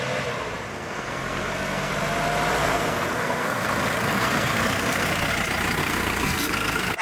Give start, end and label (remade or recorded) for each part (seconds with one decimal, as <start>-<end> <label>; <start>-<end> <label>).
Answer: 0.0-0.7 recorded; 0.7-1.9 remade; 1.9-2.6 recorded; 2.6-5.3 remade; 5.3-5.8 recorded; 5.8-7.0 remade